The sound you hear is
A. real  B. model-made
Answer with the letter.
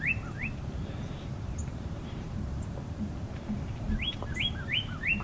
B